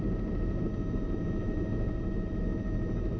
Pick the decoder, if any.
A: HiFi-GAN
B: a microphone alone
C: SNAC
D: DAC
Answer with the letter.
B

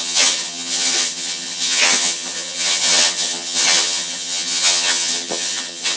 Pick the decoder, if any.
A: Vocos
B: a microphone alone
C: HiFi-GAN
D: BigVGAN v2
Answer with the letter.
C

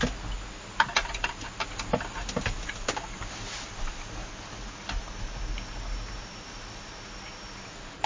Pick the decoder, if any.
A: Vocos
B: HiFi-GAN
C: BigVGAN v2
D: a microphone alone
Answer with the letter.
D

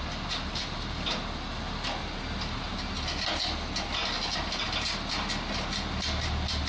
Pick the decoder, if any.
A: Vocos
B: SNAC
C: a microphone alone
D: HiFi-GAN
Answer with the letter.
C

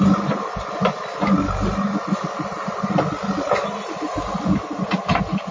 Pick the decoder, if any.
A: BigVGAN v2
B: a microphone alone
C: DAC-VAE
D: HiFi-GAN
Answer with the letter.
B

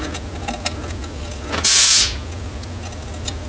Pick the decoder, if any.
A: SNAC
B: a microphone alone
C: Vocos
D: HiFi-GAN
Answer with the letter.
B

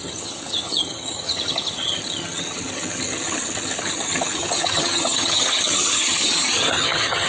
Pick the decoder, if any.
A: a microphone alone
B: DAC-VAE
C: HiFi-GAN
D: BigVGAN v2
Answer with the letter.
C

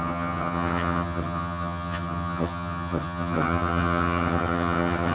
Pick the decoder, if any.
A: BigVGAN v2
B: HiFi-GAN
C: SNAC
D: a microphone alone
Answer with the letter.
B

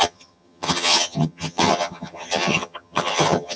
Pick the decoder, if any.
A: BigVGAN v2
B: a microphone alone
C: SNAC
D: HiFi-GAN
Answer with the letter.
D